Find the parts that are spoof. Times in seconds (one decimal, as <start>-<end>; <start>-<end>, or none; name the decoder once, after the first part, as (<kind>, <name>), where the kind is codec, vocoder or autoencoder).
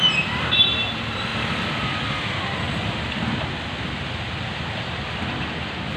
none